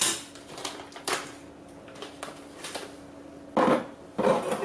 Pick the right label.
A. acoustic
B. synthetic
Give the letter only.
A